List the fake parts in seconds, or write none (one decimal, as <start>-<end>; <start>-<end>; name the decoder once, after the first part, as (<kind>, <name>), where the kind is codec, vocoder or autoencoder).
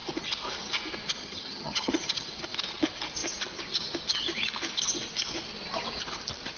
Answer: 1.2-2.3 (vocoder, HiFi-GAN)